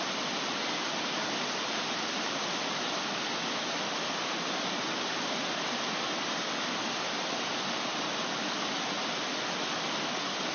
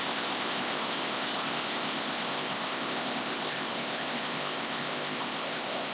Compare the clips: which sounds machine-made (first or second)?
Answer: second